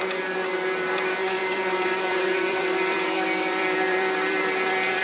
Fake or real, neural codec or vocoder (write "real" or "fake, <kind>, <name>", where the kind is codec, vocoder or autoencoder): fake, vocoder, BigVGAN v2